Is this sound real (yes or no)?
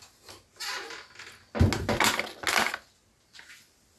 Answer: yes